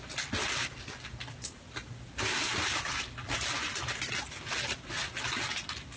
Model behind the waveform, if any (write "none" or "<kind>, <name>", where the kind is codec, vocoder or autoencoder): none